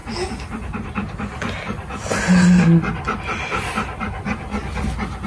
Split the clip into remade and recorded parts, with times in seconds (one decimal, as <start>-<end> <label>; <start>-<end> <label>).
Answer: 0.0-5.3 recorded

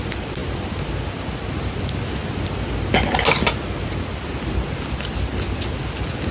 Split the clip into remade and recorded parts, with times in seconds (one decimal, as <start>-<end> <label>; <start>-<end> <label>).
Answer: 0.0-6.3 recorded